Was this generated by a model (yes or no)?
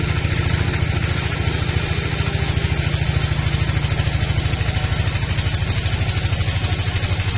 no